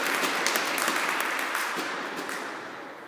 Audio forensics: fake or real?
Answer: real